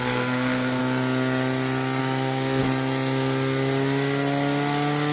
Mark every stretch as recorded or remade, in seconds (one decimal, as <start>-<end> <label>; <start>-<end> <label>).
0.0-0.8 remade; 0.8-2.0 recorded; 2.0-2.6 remade; 2.6-5.1 recorded